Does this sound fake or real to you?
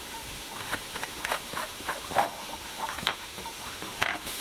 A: fake